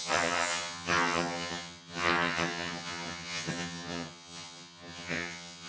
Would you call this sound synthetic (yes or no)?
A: yes